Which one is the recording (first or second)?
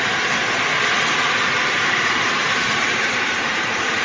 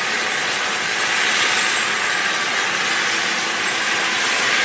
second